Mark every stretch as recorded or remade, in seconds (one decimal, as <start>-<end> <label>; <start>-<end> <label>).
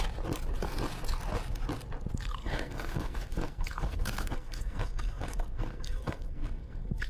0.0-2.4 recorded; 2.4-7.1 remade